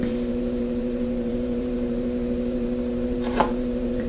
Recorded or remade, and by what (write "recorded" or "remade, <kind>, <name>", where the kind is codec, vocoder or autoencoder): remade, vocoder, BigVGAN v2